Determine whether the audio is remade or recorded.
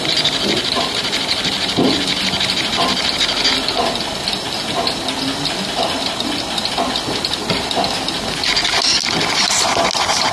recorded